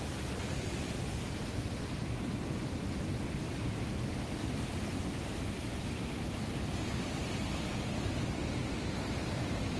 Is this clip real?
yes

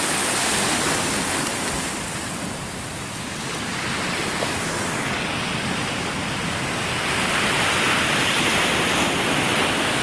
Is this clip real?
yes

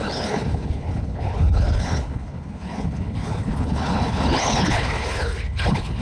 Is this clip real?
no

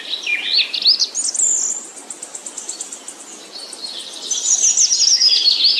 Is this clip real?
yes